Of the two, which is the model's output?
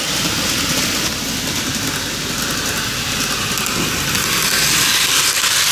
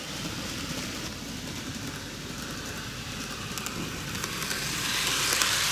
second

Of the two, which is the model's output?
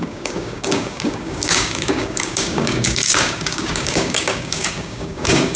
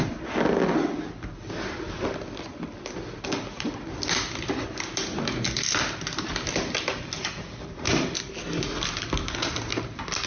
first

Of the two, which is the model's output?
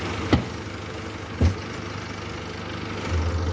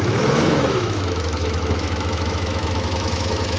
second